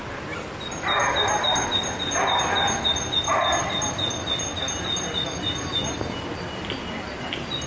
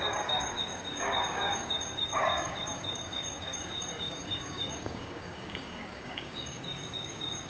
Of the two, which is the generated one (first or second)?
second